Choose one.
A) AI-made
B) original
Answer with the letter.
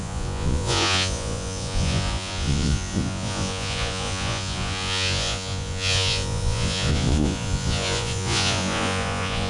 A